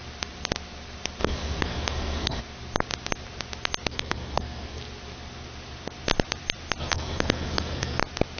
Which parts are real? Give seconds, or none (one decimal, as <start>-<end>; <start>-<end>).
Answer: 0.0-1.2; 2.4-3.9; 4.8-6.8; 8.0-8.4